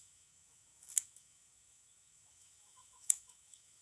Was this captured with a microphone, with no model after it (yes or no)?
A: no